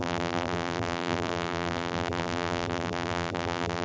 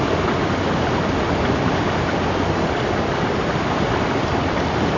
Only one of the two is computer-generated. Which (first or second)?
first